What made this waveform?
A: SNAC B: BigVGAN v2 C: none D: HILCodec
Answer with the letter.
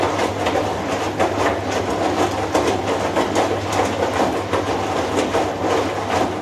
C